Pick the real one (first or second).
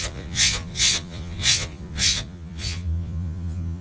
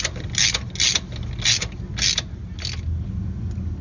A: second